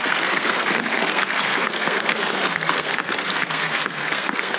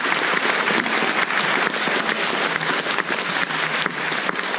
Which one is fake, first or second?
first